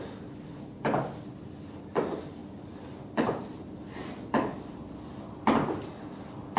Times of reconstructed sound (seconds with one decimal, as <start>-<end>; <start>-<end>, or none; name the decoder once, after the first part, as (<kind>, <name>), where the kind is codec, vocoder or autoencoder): none